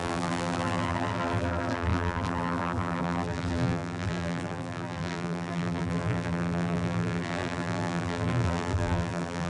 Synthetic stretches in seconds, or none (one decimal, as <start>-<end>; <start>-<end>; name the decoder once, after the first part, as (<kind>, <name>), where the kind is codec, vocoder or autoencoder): 0.0-9.5 (vocoder, BigVGAN v2)